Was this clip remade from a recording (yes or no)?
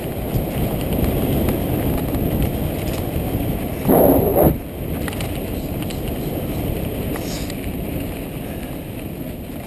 no